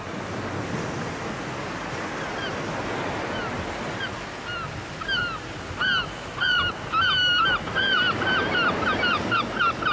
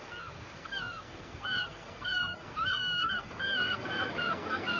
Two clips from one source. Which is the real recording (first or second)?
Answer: first